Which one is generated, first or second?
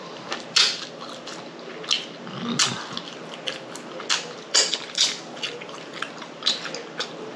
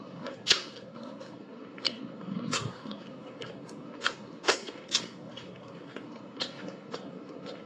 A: second